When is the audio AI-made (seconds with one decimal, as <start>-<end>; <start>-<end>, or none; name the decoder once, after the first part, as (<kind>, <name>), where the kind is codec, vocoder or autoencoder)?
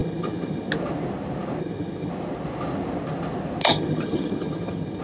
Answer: 0.0-0.7 (vocoder, HiFi-GAN); 1.6-2.1; 3.6-5.0